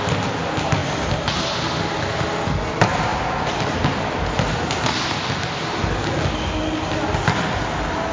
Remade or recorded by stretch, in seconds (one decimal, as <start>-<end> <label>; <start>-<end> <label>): 0.0-8.1 recorded